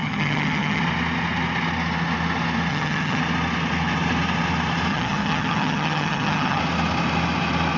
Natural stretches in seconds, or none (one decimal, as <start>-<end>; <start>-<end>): 0.8-2.7; 3.2-4.9; 6.6-7.8